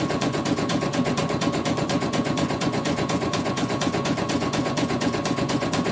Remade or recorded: remade